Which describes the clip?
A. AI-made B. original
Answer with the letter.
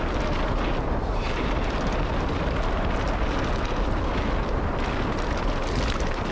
B